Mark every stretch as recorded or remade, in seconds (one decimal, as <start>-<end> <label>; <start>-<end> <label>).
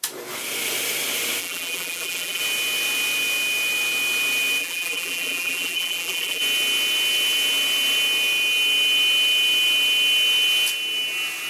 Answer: 0.0-1.4 recorded; 1.4-2.4 remade; 2.4-4.6 recorded; 4.6-6.4 remade; 6.4-11.5 recorded